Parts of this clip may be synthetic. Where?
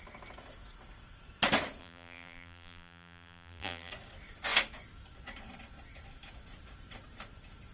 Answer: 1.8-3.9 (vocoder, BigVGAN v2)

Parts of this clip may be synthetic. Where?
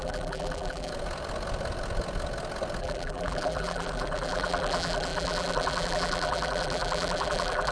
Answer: 0.0-0.9 (vocoder, BigVGAN v2); 2.8-7.7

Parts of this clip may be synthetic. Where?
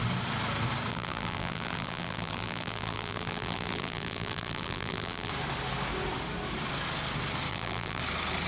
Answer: 0.9-5.3 (vocoder, BigVGAN v2); 7.5-8.0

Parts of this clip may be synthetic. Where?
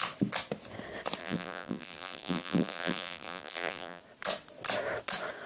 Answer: 1.2-4.0 (vocoder, BigVGAN v2)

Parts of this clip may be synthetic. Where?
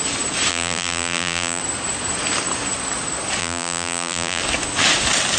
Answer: 0.5-1.6 (vocoder, BigVGAN v2); 3.4-4.4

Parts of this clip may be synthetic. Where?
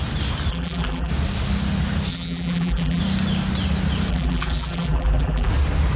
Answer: 0.5-1.1 (vocoder, BigVGAN v2); 2.1-3.0; 4.1-5.5